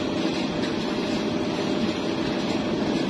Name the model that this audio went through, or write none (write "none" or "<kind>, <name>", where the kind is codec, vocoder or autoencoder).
none